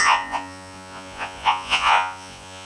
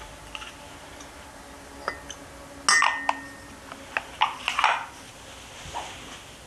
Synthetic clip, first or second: first